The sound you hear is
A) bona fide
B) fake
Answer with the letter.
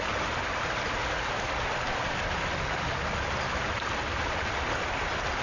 A